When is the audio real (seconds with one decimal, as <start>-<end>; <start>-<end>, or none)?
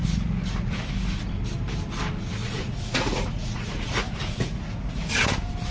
0.8-2.4; 5.1-5.7